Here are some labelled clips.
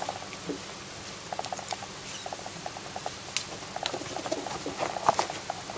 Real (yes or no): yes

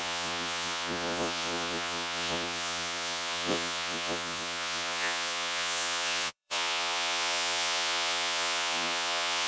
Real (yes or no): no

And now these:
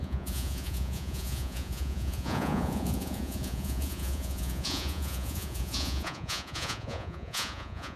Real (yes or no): no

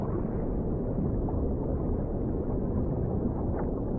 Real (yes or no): yes